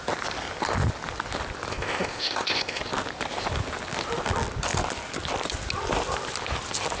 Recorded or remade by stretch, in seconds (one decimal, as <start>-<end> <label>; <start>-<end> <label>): 0.0-1.7 recorded; 1.7-2.8 remade; 2.8-7.0 recorded